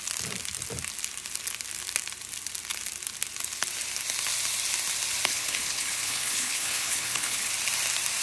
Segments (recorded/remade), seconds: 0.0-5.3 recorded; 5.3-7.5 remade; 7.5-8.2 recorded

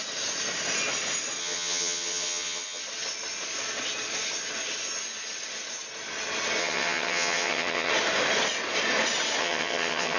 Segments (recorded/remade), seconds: 0.0-1.4 recorded; 1.4-2.8 remade; 2.8-6.6 recorded; 6.6-7.9 remade; 7.9-9.4 recorded; 9.4-10.2 remade

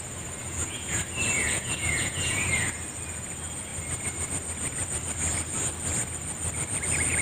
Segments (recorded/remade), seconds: 0.0-0.4 recorded; 0.4-1.0 remade; 1.0-1.4 recorded; 1.4-2.5 remade; 2.5-7.2 recorded